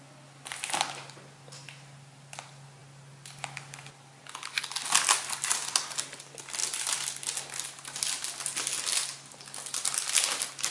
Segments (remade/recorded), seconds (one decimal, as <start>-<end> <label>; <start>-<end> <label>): 0.0-10.7 recorded